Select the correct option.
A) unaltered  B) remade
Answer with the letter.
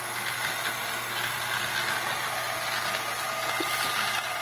A